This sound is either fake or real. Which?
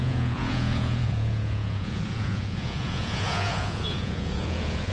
fake